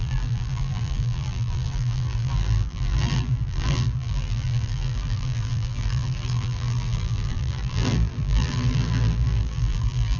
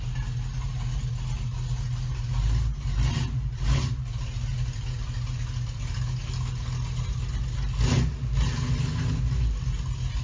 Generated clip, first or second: first